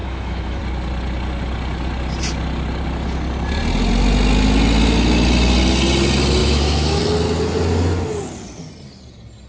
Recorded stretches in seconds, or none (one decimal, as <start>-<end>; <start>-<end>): 0.6-6.4; 7.0-9.5